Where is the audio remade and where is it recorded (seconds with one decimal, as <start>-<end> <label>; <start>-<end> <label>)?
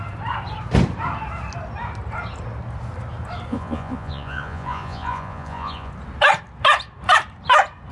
0.0-3.5 recorded; 3.5-5.9 remade; 5.9-7.9 recorded